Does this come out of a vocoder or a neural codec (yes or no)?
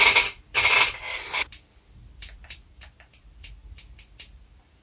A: yes